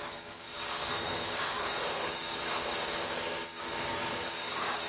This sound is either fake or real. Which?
fake